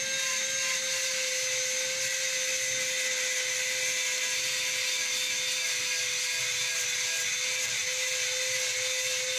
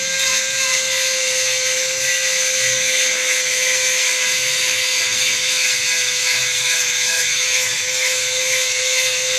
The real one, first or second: first